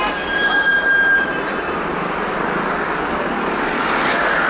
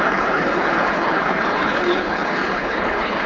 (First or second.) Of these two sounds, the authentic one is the first